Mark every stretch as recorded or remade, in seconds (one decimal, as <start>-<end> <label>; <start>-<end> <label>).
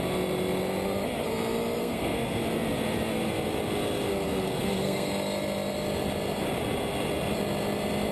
0.0-1.8 recorded; 1.8-2.4 remade; 2.4-4.1 recorded; 4.1-5.1 remade; 5.1-8.1 recorded